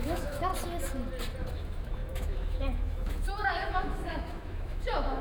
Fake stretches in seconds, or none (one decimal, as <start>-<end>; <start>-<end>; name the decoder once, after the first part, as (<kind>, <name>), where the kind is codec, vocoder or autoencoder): 0.0-0.5 (autoencoder, DAC-VAE); 1.5-5.2